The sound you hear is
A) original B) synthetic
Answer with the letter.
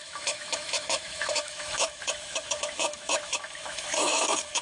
B